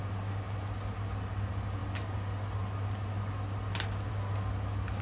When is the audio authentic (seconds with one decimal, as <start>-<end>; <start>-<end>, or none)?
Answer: 0.0-5.0